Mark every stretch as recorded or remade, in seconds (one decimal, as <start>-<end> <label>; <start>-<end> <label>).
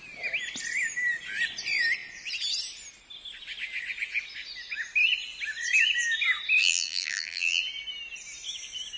0.0-6.6 recorded; 6.6-7.6 remade; 7.6-9.0 recorded